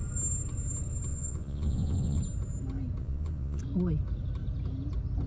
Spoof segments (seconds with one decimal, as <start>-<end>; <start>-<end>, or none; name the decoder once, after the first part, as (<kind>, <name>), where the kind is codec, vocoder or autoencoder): 1.1-2.2 (vocoder, Vocos); 3.0-3.6